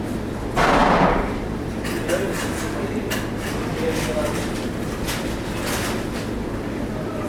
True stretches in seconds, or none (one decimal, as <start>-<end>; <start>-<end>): 0.0-0.8; 1.7-7.3